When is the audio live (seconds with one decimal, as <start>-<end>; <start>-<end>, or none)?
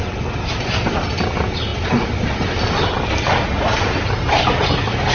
0.0-5.1